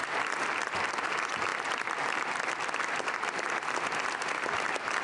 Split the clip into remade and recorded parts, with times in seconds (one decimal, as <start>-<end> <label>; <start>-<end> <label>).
0.0-0.9 remade; 0.9-1.5 recorded; 1.5-4.5 remade; 4.5-5.0 recorded